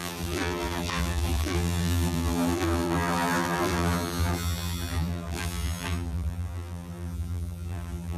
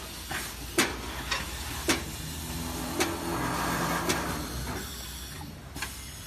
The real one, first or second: second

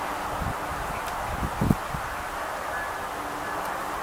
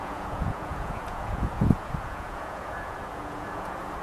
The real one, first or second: first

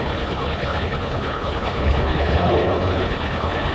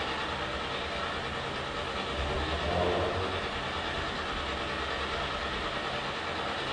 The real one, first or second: second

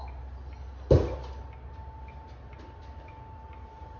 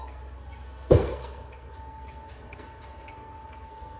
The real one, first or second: first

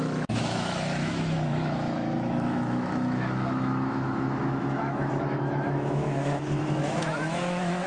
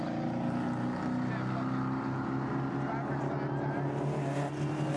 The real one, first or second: second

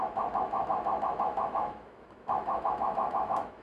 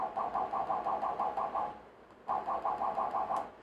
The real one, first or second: second